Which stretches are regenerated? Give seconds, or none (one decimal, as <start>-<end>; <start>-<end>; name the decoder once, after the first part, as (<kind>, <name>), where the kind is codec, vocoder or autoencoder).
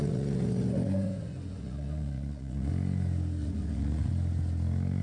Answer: 0.0-2.7 (vocoder, Vocos); 3.4-4.1